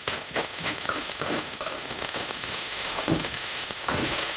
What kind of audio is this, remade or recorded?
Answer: remade